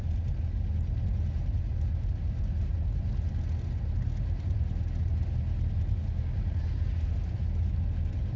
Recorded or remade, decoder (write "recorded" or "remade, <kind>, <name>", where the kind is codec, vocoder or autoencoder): recorded